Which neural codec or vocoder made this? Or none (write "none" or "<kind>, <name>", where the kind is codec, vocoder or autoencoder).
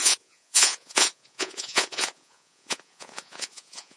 vocoder, Vocos